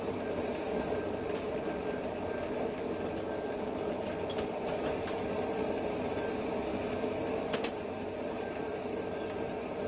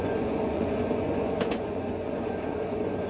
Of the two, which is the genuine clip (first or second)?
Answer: first